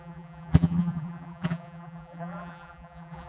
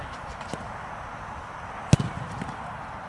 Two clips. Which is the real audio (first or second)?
second